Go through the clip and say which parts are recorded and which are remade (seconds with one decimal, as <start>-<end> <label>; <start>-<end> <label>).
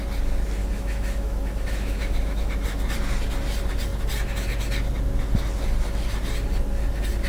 0.0-0.6 recorded; 0.6-2.5 remade; 2.5-7.3 recorded